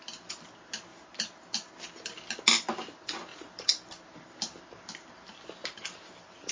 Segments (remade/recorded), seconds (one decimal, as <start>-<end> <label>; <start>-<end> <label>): 0.0-3.3 recorded; 3.3-6.5 remade